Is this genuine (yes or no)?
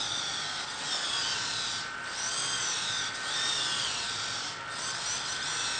yes